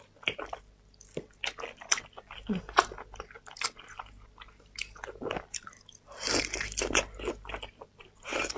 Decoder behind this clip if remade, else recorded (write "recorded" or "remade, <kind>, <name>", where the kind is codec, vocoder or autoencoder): recorded